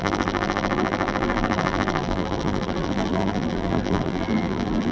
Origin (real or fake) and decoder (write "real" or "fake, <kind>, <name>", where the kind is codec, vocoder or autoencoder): fake, vocoder, BigVGAN v2